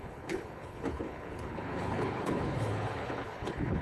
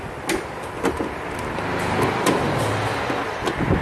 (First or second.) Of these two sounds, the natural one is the second